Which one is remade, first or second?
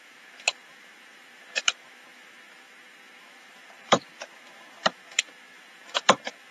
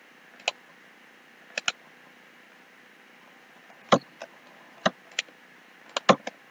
first